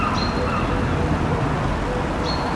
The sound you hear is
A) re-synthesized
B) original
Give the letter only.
B